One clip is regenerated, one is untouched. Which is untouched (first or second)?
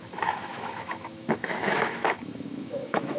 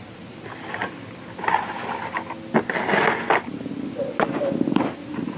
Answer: second